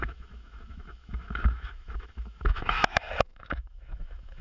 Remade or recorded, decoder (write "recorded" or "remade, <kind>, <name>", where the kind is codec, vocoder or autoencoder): remade, autoencoder, DAC-VAE